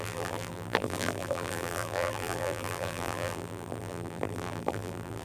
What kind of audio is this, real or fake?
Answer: fake